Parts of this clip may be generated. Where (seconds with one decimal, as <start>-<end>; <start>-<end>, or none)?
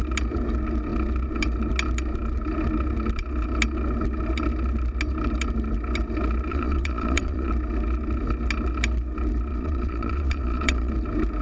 6.5-7.5; 9.5-10.9